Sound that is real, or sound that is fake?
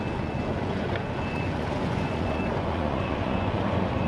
fake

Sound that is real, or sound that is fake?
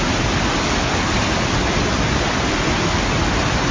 real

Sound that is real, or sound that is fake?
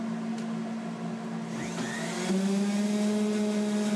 real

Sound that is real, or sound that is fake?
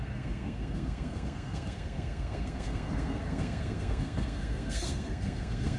fake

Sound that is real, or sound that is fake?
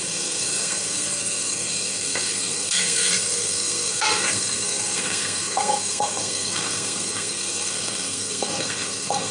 fake